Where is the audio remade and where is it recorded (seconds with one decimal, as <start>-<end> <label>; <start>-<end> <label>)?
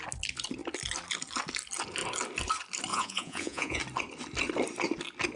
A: 0.0-2.9 recorded; 2.9-3.8 remade; 3.8-5.4 recorded